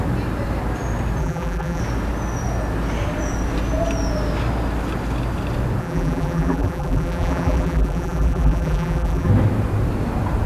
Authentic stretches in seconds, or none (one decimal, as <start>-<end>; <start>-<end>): 0.0-1.2; 1.8-5.8; 9.3-10.5